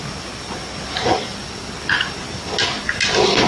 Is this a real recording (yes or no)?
yes